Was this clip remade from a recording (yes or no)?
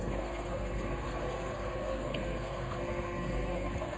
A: yes